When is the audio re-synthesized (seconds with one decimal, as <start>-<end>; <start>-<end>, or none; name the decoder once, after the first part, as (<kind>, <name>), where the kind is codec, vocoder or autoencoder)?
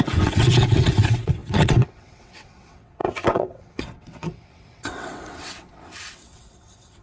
0.0-7.0 (vocoder, WaveNeXt)